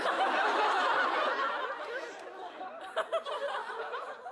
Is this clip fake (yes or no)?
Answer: no